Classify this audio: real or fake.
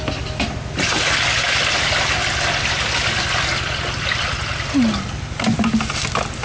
real